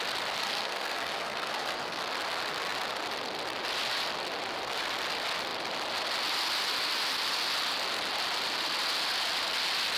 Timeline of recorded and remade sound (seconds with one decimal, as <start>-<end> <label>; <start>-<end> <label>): 0.0-0.4 recorded; 0.4-2.0 remade; 2.0-10.0 recorded